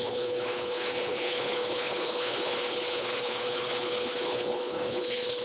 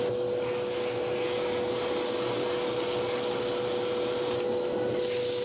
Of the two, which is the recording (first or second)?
second